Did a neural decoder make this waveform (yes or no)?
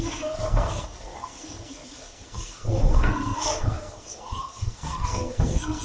yes